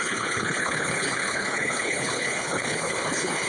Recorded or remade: remade